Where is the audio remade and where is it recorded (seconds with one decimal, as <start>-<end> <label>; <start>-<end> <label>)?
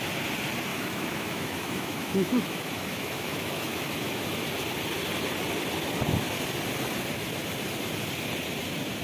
0.0-0.7 recorded; 0.7-4.2 remade; 4.2-9.0 recorded